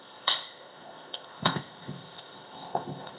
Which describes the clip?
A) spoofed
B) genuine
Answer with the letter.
A